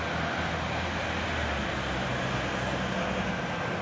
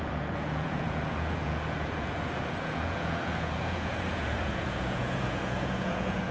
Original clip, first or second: first